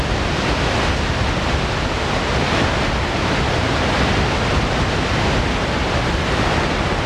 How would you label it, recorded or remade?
recorded